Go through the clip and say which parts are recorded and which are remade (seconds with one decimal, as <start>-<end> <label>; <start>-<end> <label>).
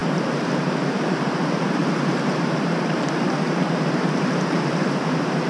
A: 0.0-1.4 remade; 1.4-1.8 recorded; 1.8-5.0 remade; 5.0-5.5 recorded